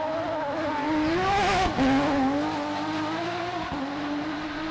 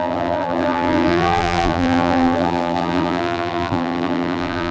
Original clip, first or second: first